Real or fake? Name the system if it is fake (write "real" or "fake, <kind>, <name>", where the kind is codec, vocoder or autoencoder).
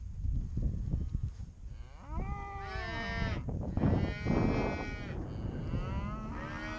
real